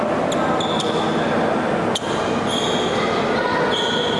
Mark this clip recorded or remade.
recorded